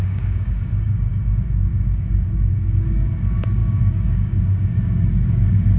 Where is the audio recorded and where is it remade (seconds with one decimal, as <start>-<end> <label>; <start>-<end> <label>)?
0.0-5.8 remade